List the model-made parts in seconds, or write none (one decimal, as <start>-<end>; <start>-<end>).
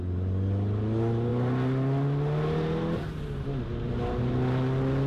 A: none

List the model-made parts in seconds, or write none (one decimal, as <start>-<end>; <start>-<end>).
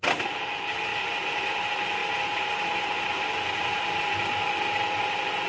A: none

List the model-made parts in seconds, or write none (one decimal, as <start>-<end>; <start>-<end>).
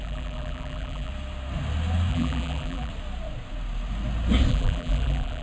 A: 0.0-1.1; 2.1-2.9; 4.5-5.4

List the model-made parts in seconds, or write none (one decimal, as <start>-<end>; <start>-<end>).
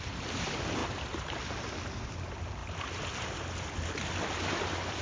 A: 0.0-0.8; 2.2-5.0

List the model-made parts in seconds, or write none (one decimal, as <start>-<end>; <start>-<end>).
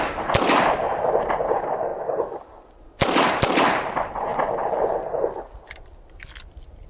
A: none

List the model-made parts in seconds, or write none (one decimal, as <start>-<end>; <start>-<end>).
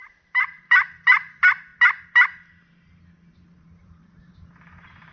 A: 0.0-1.7; 3.4-5.1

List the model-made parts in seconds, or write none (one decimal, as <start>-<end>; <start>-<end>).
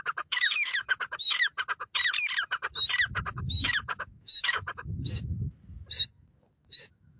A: 0.0-1.5; 3.3-5.3; 6.1-7.2